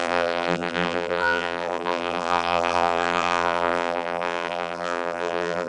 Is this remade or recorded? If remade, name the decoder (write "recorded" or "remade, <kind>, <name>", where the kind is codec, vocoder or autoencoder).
remade, vocoder, BigVGAN v2